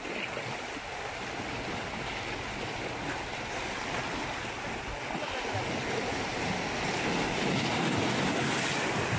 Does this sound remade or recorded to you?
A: recorded